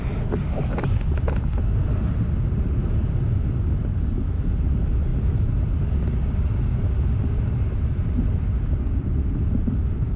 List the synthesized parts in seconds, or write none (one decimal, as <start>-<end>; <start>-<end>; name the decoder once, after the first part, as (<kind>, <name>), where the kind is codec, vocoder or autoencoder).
none